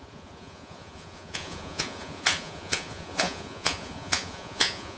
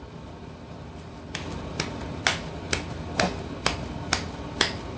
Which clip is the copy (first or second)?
first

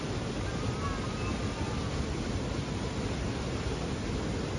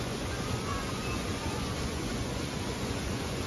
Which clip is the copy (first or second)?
second